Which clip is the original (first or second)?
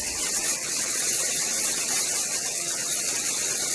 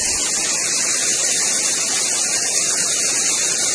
second